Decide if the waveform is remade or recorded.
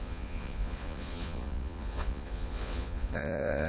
remade